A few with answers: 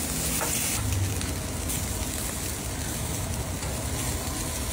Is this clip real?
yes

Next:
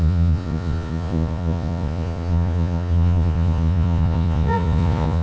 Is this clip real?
no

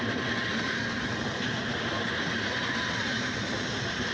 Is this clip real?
no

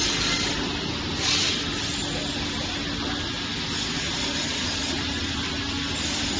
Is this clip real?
yes